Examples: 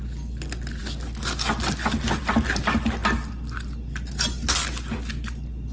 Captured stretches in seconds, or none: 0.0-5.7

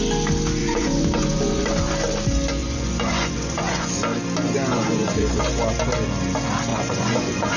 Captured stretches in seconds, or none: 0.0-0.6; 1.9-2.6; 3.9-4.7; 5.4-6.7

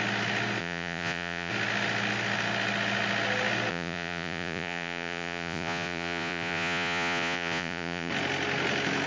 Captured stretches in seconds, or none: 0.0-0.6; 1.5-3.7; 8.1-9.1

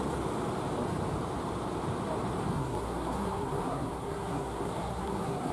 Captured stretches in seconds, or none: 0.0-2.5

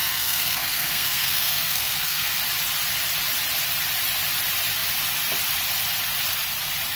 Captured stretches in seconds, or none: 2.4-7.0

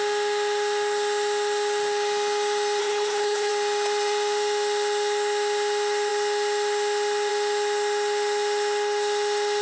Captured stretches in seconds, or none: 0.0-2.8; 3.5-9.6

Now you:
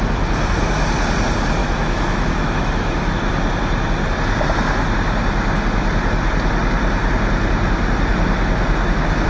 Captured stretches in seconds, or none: 0.0-1.6; 3.3-9.3

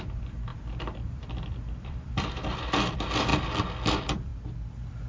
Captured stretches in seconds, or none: 3.3-3.9; 4.3-5.1